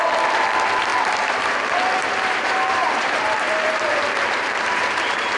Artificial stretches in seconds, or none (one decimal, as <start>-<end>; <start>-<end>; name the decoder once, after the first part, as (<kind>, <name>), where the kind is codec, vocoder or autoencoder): 0.9-1.5 (vocoder, BigVGAN v2); 2.0-5.4